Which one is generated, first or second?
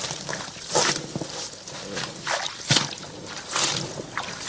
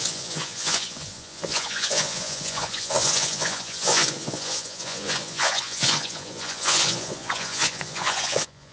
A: second